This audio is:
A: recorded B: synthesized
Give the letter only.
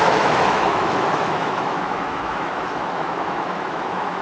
B